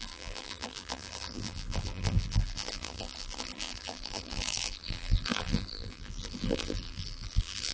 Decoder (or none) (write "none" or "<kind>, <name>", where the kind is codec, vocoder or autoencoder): vocoder, BigVGAN v2